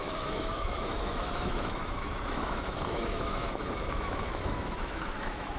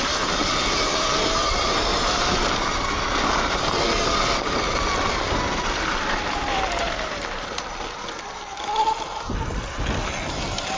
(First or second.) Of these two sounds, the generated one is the first